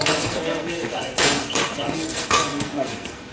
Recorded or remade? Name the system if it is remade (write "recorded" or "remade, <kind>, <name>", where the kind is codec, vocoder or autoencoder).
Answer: remade, codec, SNAC